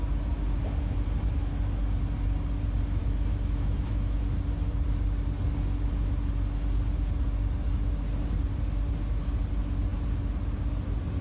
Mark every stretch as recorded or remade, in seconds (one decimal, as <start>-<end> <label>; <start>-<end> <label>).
0.0-3.0 recorded; 3.0-4.2 remade; 4.2-11.2 recorded